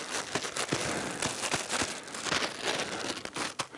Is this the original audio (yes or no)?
yes